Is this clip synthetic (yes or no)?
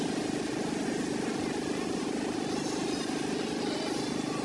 no